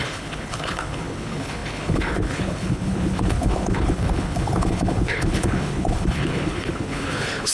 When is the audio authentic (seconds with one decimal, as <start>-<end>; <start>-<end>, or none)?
none